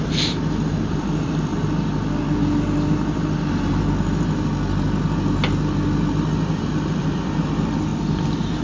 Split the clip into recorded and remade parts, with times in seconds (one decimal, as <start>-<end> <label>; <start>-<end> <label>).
0.0-1.5 remade; 1.5-6.5 recorded; 6.5-8.6 remade